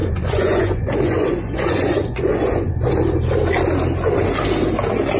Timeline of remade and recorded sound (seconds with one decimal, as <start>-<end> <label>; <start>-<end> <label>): 0.0-2.9 remade; 2.9-5.2 recorded